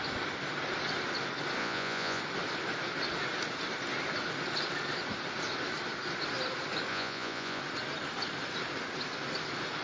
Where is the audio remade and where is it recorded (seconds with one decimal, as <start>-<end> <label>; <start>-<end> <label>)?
0.0-1.6 recorded; 1.6-2.2 remade; 2.2-6.9 recorded; 6.9-7.6 remade; 7.6-9.8 recorded